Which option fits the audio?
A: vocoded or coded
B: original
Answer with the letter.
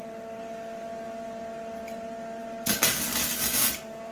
B